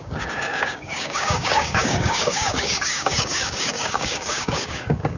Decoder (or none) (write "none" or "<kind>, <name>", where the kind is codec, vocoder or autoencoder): codec, DAC